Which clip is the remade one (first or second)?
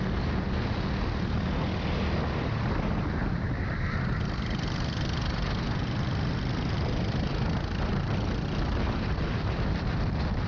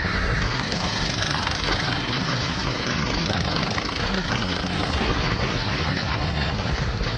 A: second